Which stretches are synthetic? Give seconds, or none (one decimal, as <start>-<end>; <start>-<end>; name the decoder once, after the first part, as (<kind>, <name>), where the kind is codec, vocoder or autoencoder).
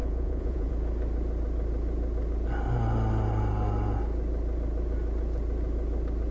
0.0-0.7 (vocoder, Vocos)